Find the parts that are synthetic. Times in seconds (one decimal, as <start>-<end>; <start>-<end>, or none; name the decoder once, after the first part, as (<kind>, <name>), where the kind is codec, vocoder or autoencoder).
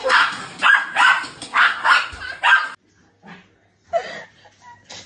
0.0-0.4 (codec, SNAC); 1.4-1.8